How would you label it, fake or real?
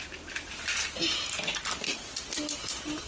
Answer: real